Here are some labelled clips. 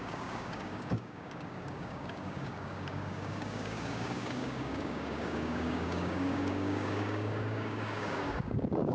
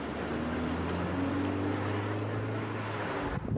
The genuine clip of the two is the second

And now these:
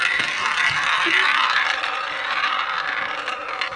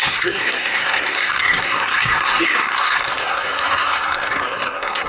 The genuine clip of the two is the first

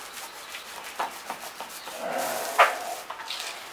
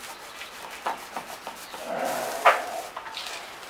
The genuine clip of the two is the first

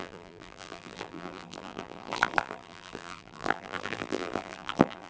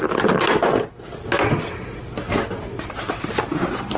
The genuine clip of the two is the second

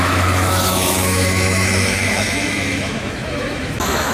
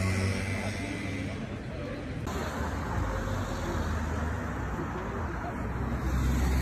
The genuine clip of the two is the second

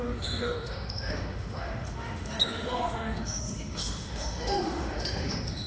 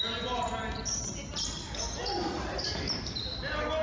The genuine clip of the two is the second